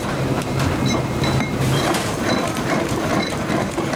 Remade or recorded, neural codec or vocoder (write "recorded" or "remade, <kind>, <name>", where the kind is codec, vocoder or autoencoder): remade, vocoder, BigVGAN v2